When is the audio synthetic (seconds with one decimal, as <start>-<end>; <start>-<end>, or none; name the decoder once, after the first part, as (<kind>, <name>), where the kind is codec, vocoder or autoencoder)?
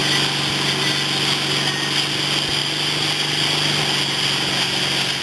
none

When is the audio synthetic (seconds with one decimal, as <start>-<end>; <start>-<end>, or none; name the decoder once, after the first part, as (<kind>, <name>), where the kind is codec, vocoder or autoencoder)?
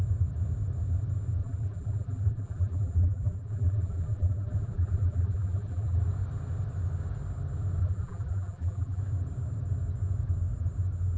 1.4-6.0 (vocoder, BigVGAN v2); 7.8-9.0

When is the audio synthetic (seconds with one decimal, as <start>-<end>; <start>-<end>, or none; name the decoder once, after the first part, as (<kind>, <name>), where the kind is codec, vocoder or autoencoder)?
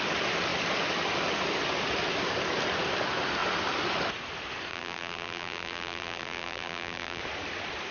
4.7-7.2 (vocoder, BigVGAN v2)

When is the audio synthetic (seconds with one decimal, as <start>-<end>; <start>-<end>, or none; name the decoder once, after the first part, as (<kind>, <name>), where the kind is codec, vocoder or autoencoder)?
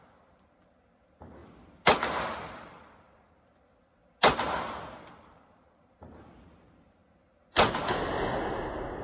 0.0-1.4 (vocoder, BigVGAN v2); 2.3-4.0; 5.0-7.0